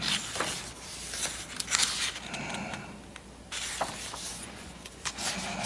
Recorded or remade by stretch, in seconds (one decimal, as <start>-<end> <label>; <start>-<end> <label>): 0.0-4.3 recorded; 4.3-5.3 remade; 5.3-5.7 recorded